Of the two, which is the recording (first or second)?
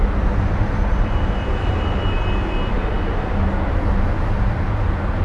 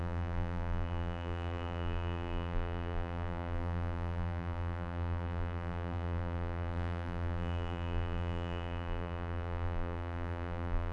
first